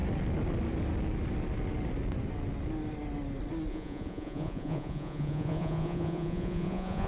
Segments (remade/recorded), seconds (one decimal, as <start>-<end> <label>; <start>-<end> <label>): 0.0-3.7 recorded; 3.7-7.1 remade

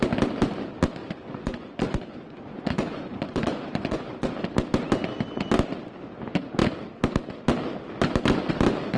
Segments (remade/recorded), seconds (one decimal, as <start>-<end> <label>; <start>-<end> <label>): 0.0-1.0 recorded; 1.0-4.3 remade; 4.3-9.0 recorded

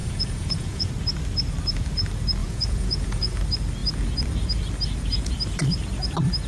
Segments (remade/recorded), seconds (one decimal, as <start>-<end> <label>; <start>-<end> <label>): 0.0-0.9 remade; 0.9-2.4 recorded; 2.4-3.4 remade; 3.4-6.5 recorded

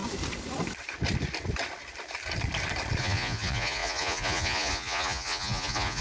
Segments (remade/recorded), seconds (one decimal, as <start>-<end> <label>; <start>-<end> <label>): 0.0-3.0 recorded; 3.0-6.0 remade

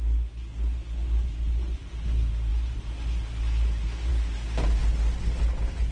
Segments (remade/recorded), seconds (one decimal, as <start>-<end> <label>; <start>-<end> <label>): 0.0-5.9 recorded

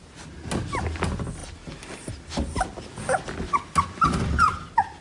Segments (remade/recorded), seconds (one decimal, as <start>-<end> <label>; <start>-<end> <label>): 0.0-5.0 recorded